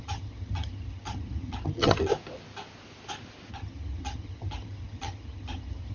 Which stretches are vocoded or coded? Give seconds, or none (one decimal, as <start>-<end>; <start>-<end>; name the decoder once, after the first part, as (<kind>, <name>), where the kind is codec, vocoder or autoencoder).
0.0-2.1 (vocoder, HiFi-GAN); 3.5-5.9

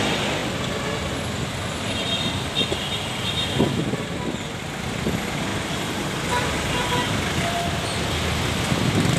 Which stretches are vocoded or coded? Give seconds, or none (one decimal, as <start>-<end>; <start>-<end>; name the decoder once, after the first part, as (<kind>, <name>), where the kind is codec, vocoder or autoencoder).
5.5-6.1 (vocoder, BigVGAN v2)

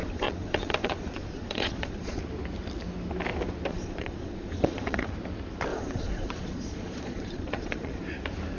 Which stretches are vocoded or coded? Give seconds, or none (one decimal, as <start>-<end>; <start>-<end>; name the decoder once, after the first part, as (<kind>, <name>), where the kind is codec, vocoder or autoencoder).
0.0-2.2 (vocoder, Vocos); 3.7-5.1; 5.7-8.0

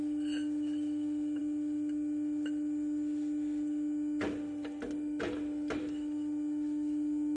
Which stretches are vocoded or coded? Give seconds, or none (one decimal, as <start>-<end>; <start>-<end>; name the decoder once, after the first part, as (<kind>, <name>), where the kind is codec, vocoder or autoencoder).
none